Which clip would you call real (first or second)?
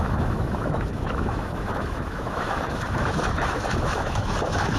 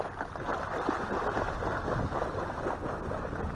second